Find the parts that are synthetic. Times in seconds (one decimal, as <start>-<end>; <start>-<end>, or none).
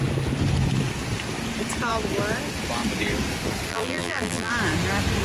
3.7-4.5